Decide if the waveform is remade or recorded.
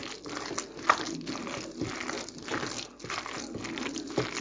recorded